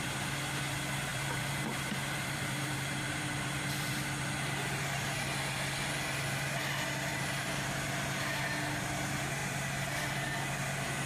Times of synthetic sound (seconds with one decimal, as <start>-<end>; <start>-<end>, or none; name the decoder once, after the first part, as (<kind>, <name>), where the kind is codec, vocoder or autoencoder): 1.1-3.9 (vocoder, BigVGAN v2); 7.1-7.7